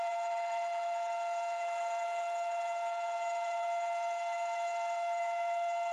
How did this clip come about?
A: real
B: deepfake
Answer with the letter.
B